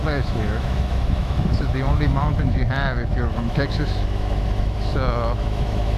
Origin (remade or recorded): remade